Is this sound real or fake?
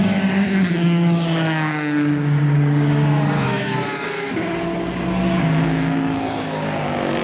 fake